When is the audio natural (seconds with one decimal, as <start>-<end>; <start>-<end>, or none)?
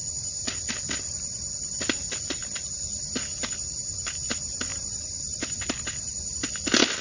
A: 0.0-4.7; 5.6-7.0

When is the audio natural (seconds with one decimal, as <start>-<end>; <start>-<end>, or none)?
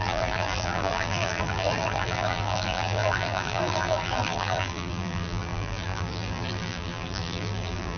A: none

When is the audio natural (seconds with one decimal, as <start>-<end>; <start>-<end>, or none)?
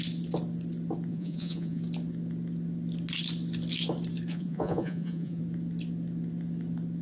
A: 0.0-1.1; 1.8-4.3; 5.4-7.0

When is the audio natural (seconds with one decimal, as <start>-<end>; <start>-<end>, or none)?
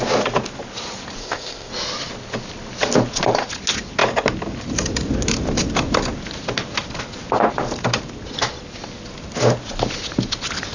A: 0.0-1.2; 1.7-10.7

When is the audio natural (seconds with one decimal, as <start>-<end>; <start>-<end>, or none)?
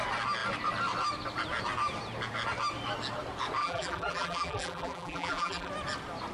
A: 0.0-3.6; 5.7-6.3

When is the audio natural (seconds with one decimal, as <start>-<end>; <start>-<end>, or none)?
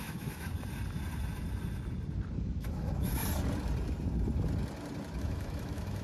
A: 0.5-2.4; 3.2-5.2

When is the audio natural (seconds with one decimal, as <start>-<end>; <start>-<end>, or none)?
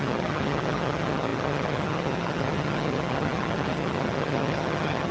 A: none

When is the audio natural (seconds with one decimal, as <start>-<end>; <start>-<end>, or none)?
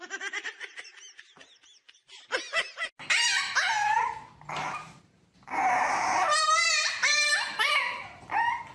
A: 0.9-4.5